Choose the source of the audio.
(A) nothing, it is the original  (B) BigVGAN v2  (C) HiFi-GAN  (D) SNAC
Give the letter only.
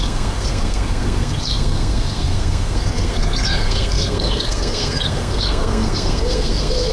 D